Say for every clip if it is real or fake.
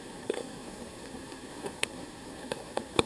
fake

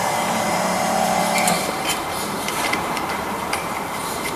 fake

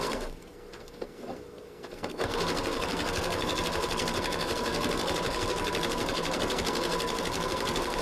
fake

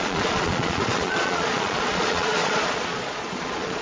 fake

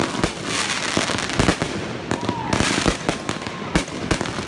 real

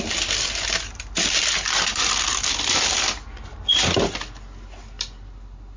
real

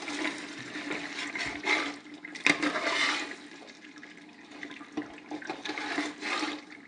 real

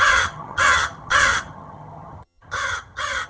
fake